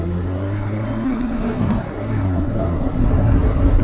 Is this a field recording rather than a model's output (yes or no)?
no